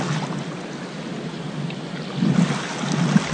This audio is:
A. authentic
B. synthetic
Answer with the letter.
A